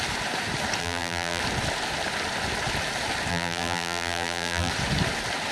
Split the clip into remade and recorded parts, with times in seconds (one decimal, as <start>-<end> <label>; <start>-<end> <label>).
0.0-0.8 recorded; 0.8-1.4 remade; 1.4-3.3 recorded; 3.3-4.7 remade; 4.7-5.5 recorded